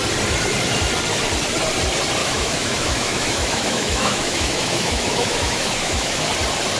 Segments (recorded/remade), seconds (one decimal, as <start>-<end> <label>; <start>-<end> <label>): 0.0-2.2 recorded; 2.2-6.3 remade; 6.3-6.8 recorded